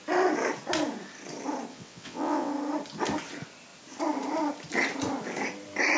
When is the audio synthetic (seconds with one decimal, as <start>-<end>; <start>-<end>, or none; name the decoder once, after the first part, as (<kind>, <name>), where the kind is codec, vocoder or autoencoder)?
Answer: 1.7-2.5 (vocoder, WaveNeXt)